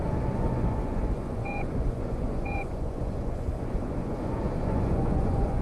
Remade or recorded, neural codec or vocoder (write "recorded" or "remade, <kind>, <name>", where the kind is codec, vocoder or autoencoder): remade, vocoder, Vocos